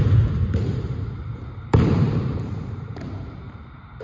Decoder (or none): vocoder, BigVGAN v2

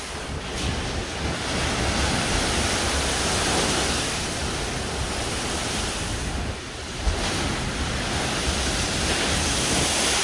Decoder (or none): none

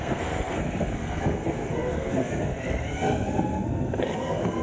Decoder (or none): codec, SNAC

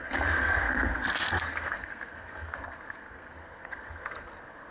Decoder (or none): codec, SNAC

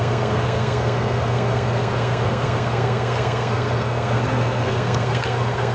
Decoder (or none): codec, SNAC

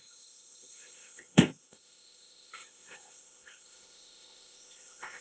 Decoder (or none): codec, ZipCodec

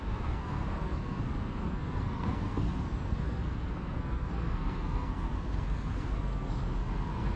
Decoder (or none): codec, SNAC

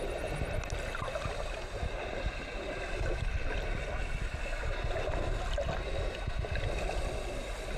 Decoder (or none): none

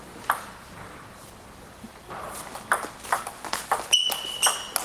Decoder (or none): none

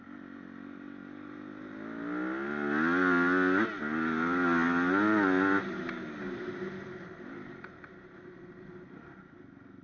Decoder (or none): none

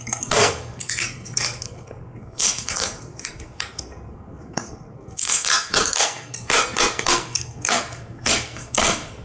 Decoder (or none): codec, SNAC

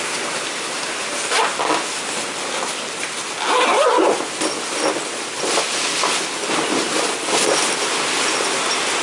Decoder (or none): none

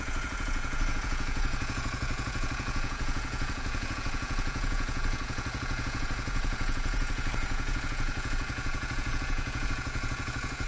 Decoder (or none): vocoder, Vocos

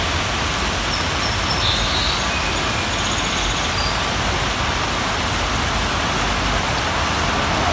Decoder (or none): none